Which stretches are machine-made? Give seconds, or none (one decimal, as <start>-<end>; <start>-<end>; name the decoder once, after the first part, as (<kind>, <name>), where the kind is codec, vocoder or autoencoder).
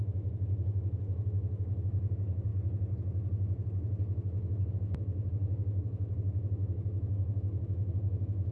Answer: 0.0-2.5 (autoencoder, DAC-VAE); 4.7-8.5